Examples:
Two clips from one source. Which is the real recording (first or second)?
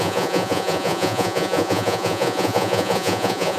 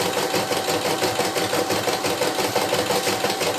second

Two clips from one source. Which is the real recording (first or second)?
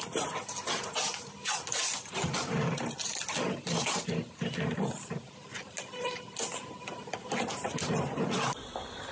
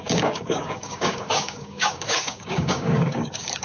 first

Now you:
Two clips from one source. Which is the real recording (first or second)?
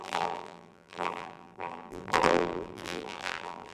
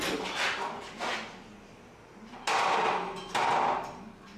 second